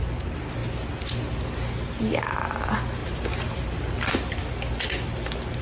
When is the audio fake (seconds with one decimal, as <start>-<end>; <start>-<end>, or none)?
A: none